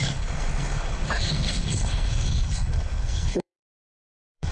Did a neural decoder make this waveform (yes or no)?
yes